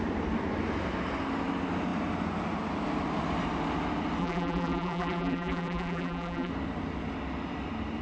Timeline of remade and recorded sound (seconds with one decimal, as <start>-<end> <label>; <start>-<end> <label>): 0.0-4.2 recorded; 4.2-6.5 remade; 6.5-8.0 recorded